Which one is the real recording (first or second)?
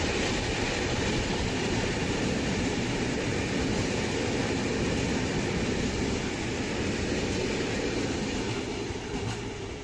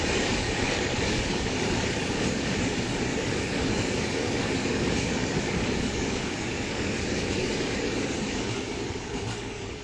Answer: first